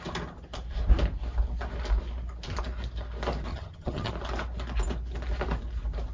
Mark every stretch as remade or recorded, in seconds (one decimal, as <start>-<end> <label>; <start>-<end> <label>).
0.0-3.5 recorded; 3.5-4.1 remade; 4.1-6.1 recorded

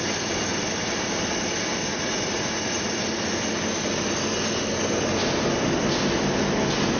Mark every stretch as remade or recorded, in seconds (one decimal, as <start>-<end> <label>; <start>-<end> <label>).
0.0-1.9 recorded; 1.9-2.9 remade; 2.9-7.0 recorded